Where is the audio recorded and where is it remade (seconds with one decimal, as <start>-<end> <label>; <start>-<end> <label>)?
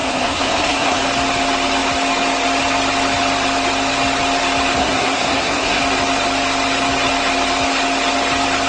0.0-1.0 remade; 1.0-4.8 recorded; 4.8-5.8 remade; 5.8-8.7 recorded